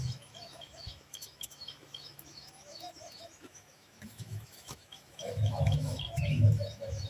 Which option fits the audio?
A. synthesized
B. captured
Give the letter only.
A